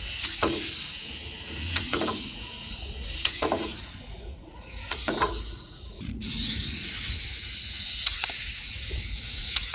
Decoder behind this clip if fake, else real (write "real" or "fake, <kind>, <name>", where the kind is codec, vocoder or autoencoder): fake, vocoder, Vocos